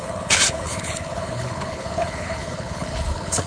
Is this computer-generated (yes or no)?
yes